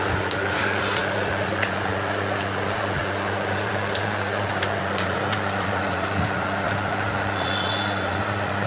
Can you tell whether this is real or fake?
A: fake